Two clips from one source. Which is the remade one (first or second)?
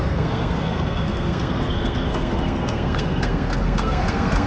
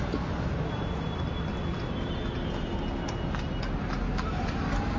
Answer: first